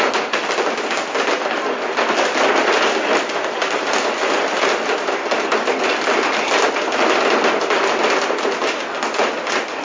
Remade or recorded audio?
recorded